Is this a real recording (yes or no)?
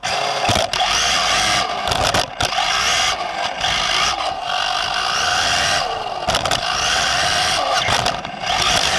yes